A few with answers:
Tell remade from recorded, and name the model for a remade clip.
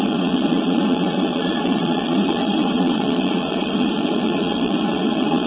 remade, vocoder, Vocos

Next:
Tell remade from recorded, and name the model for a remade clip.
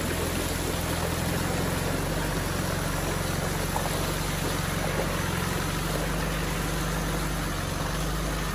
recorded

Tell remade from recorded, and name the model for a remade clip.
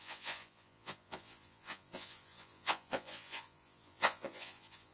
remade, vocoder, Vocos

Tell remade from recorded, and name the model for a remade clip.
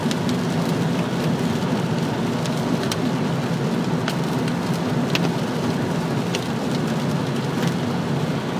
recorded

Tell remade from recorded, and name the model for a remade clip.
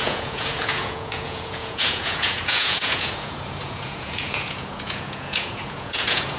remade, vocoder, Vocos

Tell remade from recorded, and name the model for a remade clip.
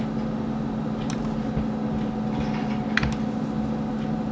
recorded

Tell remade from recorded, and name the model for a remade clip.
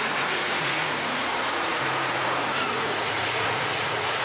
remade, vocoder, Vocos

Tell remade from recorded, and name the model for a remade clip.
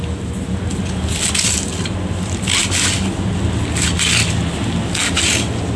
recorded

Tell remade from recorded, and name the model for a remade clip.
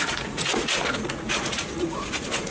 remade, vocoder, Vocos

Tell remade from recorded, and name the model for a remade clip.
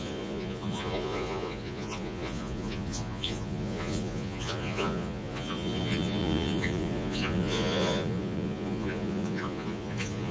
remade, vocoder, Vocos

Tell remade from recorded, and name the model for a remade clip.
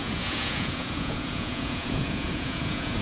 remade, vocoder, Vocos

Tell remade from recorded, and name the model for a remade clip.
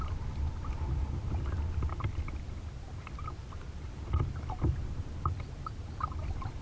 recorded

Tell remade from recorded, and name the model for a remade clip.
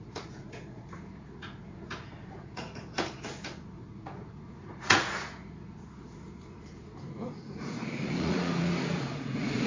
remade, vocoder, Vocos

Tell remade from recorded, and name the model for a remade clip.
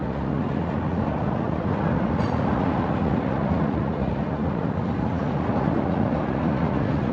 remade, vocoder, Vocos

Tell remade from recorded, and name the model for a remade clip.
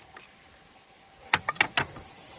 recorded